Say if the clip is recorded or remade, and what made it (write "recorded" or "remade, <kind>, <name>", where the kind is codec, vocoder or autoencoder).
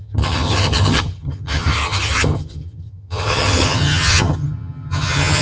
remade, vocoder, HiFi-GAN